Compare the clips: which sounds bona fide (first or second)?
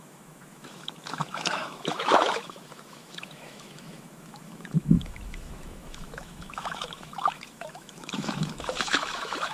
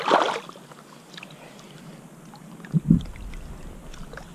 second